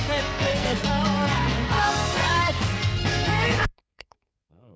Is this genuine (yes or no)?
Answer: no